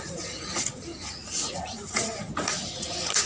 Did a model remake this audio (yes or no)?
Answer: yes